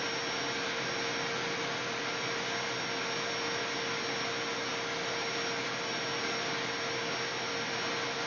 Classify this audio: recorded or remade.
recorded